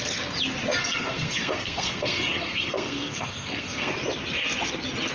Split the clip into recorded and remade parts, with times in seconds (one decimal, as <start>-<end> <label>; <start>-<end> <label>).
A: 0.0-0.8 recorded; 0.8-3.9 remade; 3.9-5.1 recorded